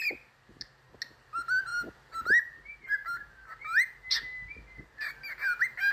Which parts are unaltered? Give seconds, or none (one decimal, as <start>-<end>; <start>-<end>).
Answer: 0.0-5.9